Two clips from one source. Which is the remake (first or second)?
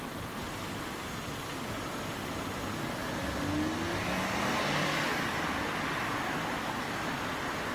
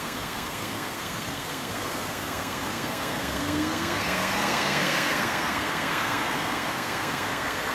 second